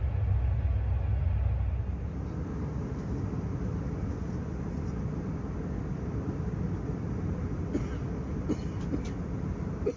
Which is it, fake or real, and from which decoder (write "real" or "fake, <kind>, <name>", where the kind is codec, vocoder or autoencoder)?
real